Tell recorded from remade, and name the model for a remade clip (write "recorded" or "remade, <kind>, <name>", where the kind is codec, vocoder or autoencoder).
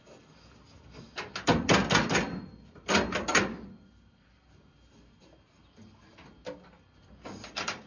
recorded